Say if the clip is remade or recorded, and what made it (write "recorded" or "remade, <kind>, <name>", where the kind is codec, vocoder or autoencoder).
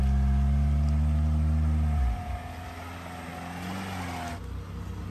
recorded